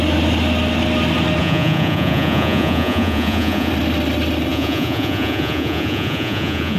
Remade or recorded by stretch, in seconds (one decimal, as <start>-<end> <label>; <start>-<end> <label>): 0.0-1.4 recorded; 1.4-3.7 remade; 3.7-4.5 recorded; 4.5-6.8 remade